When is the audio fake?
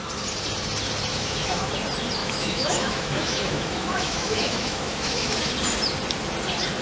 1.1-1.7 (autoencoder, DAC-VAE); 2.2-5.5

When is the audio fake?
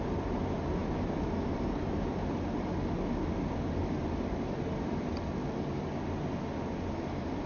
none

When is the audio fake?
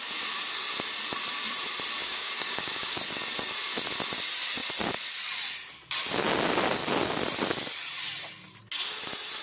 2.0-3.0 (codec, DAC)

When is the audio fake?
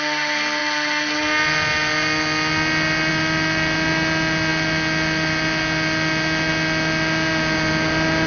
none